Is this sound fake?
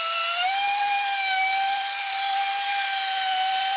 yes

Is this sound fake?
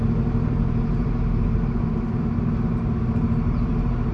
yes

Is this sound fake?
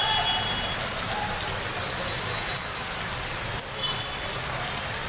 no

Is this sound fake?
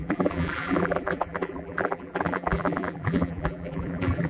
yes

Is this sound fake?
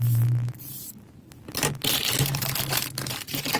yes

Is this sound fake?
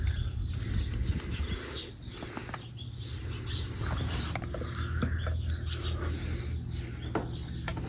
no